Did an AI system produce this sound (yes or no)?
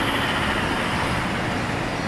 no